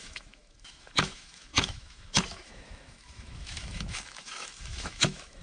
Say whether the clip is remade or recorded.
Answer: remade